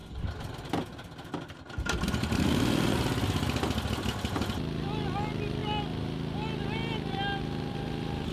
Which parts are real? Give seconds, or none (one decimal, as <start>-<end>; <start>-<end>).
0.0-8.3